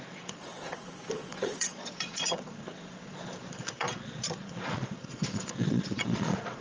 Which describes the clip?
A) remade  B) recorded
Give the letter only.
A